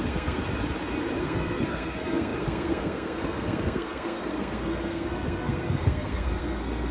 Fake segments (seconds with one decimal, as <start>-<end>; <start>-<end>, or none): 0.0-0.4; 1.2-6.9